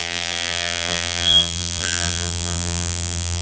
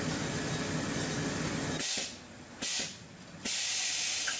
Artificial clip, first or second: first